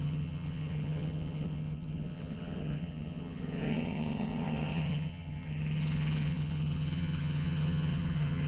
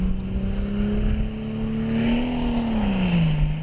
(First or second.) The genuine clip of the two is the second